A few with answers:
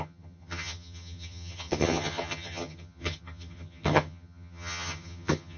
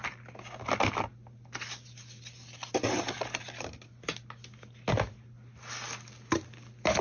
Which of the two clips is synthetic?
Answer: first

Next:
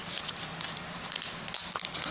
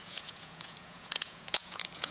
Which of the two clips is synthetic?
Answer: second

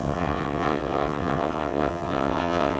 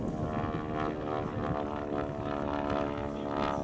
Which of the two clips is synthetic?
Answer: first